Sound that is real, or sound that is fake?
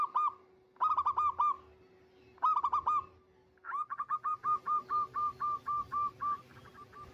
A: real